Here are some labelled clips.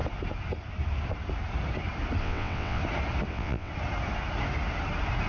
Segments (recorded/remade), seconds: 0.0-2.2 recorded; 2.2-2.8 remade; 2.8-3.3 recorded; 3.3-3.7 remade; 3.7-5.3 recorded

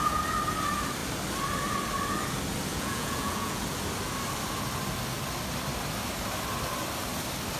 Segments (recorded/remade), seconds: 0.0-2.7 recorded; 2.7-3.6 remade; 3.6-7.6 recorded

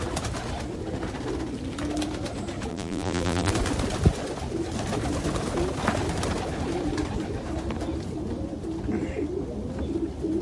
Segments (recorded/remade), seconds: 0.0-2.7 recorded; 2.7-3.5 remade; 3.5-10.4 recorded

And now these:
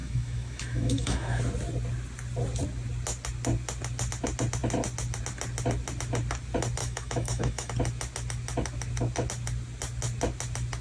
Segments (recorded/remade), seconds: 0.0-1.4 remade; 1.4-6.8 recorded; 6.8-7.7 remade; 7.7-10.8 recorded

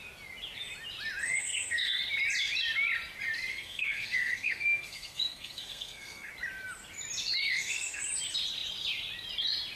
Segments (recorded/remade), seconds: 0.0-1.2 recorded; 1.2-2.0 remade; 2.0-3.5 recorded; 3.5-6.3 remade; 6.3-7.4 recorded; 7.4-8.0 remade; 8.0-9.8 recorded